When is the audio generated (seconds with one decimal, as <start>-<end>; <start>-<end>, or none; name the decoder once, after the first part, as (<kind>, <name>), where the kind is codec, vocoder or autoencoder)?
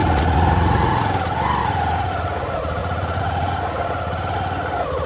0.0-1.1 (vocoder, Vocos); 1.6-2.1; 2.8-3.6